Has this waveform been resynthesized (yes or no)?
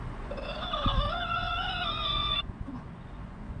yes